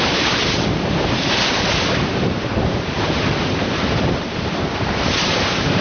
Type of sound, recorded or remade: remade